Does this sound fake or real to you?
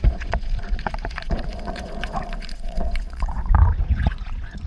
fake